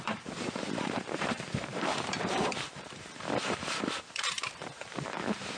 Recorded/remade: remade